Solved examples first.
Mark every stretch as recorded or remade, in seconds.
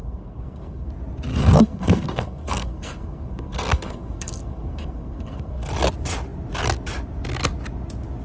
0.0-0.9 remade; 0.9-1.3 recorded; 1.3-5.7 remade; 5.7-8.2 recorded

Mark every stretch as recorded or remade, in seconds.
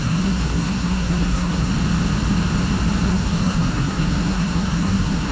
0.0-1.7 remade; 1.7-3.1 recorded; 3.1-5.3 remade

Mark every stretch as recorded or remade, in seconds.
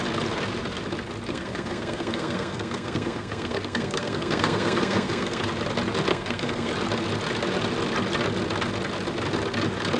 0.0-1.3 recorded; 1.3-5.4 remade; 5.4-6.1 recorded; 6.1-6.7 remade; 6.7-10.0 recorded